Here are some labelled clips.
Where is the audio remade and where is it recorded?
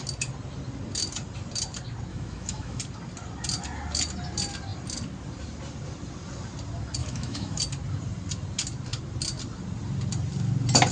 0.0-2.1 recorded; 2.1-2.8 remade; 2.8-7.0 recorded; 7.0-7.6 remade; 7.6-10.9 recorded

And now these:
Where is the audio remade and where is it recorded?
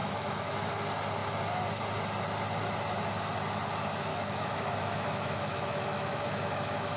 0.0-0.7 remade; 0.7-4.1 recorded; 4.1-7.0 remade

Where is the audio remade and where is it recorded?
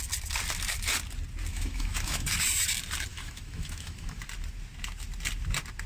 0.0-1.5 recorded; 1.5-2.4 remade; 2.4-3.1 recorded; 3.1-4.2 remade; 4.2-5.9 recorded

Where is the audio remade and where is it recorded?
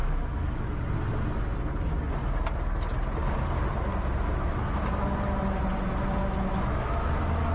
0.0-0.8 remade; 0.8-6.2 recorded; 6.2-7.1 remade; 7.1-7.5 recorded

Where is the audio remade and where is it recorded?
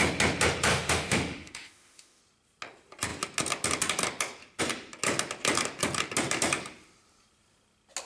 0.0-0.7 recorded; 0.7-2.2 remade; 2.2-8.1 recorded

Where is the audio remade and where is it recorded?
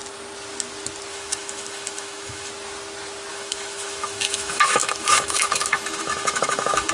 0.0-1.1 recorded; 1.1-2.5 remade; 2.5-3.3 recorded; 3.3-6.9 remade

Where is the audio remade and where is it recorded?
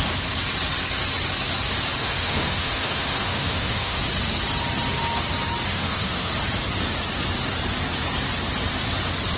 0.0-2.0 recorded; 2.0-4.0 remade; 4.0-5.7 recorded; 5.7-6.3 remade; 6.3-9.4 recorded